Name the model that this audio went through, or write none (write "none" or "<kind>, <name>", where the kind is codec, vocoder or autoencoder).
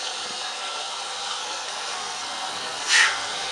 codec, SNAC